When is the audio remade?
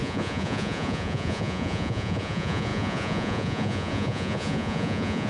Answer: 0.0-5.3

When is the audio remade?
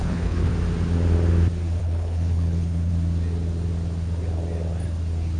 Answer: 0.0-0.5; 1.8-2.9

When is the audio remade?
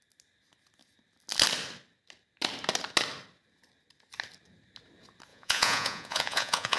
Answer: 5.3-6.8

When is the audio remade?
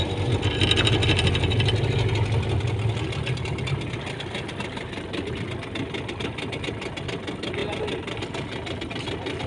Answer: none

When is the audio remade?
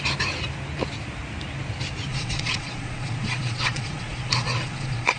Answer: 2.1-5.2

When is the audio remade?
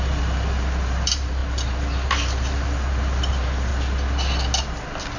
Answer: 0.0-3.7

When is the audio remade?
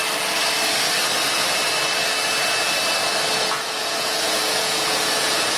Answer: 3.4-5.6